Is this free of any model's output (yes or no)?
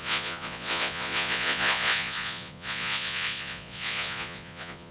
no